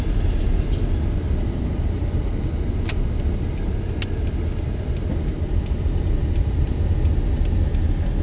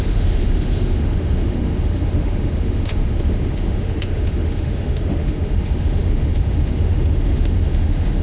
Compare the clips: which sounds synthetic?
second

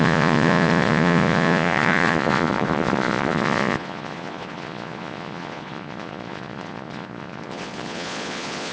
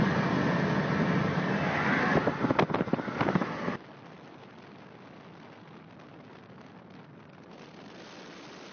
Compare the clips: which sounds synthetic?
first